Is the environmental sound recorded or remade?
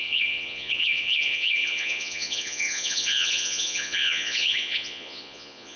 remade